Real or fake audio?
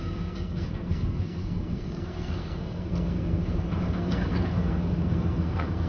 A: fake